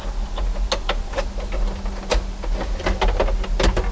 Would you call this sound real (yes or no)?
yes